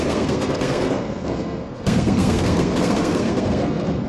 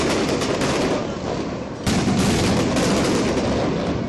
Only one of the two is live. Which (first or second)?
second